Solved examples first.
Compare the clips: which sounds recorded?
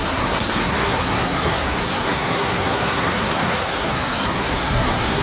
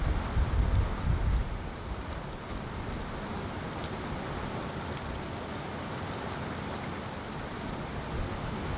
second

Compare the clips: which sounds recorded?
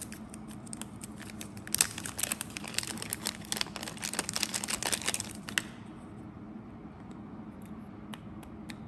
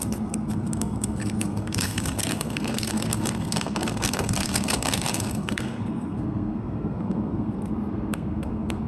first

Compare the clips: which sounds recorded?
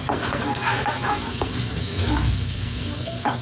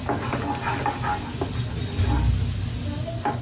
second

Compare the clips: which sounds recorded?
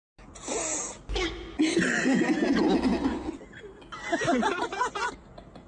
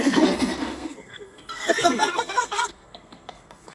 first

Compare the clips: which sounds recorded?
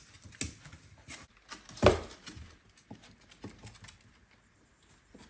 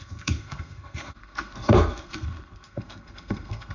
first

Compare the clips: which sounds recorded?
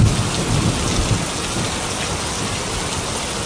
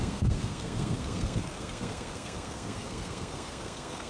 first